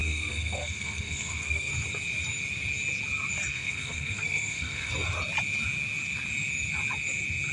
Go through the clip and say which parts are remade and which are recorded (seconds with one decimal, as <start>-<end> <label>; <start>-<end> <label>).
0.0-1.7 remade; 1.7-3.5 recorded; 3.5-4.9 remade; 4.9-7.5 recorded